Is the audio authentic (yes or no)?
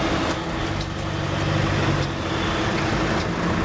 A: yes